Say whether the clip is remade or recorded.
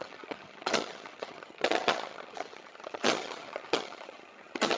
remade